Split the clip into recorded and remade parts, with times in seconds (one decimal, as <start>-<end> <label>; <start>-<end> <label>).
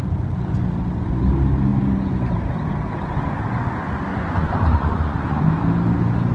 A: 0.0-4.1 recorded; 4.1-5.4 remade; 5.4-6.3 recorded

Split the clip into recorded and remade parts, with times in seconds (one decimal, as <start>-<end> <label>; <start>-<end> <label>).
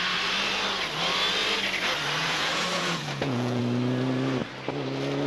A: 0.0-2.2 recorded; 2.2-3.6 remade; 3.6-5.3 recorded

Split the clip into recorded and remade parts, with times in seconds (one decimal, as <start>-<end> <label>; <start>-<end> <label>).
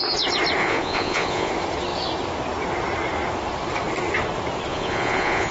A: 0.0-0.6 recorded; 0.6-1.5 remade; 1.5-4.7 recorded; 4.7-5.5 remade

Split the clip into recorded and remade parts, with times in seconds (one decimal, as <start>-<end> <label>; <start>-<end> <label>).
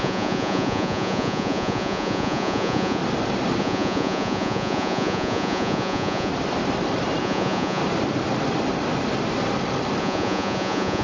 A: 0.0-3.0 remade; 3.0-3.6 recorded; 3.6-6.3 remade; 6.3-7.2 recorded; 7.2-7.8 remade; 7.8-10.0 recorded; 10.0-11.0 remade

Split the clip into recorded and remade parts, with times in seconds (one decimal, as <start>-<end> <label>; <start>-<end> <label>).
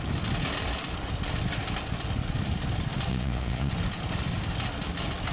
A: 0.0-3.1 recorded; 3.1-3.7 remade; 3.7-5.3 recorded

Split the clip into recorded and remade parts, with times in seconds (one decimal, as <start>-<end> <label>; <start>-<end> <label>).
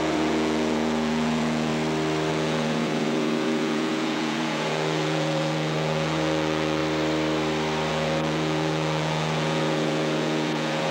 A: 0.0-1.7 remade; 1.7-2.3 recorded; 2.3-6.8 remade; 6.8-7.9 recorded; 7.9-10.9 remade